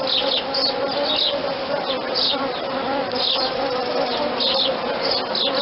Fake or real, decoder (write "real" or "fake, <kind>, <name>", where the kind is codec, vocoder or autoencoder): real